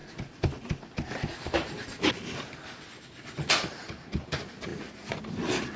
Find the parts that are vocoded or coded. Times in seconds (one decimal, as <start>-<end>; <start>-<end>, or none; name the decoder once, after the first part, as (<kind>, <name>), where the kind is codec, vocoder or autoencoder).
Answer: none